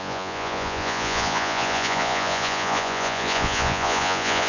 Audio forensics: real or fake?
fake